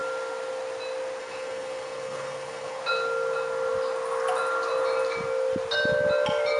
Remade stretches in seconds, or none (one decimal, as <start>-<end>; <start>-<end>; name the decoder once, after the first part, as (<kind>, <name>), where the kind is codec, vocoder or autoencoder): 1.2-2.8 (codec, HILCodec)

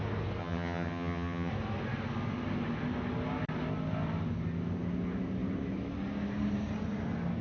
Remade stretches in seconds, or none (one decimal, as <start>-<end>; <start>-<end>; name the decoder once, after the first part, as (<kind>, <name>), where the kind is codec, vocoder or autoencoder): 0.4-1.5 (vocoder, HiFi-GAN)

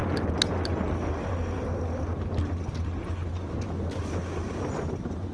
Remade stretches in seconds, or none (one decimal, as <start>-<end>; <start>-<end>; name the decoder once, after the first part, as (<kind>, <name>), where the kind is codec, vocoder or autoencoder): none

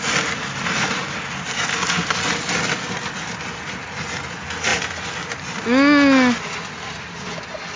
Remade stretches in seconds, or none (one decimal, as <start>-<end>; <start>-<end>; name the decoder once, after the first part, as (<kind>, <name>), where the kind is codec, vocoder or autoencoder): none